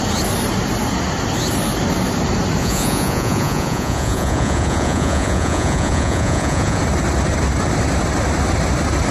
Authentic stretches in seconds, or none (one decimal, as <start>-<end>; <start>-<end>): 0.0-2.6; 6.8-9.1